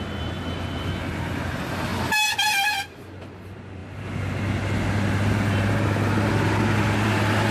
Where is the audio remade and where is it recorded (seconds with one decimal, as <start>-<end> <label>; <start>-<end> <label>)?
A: 0.0-7.5 recorded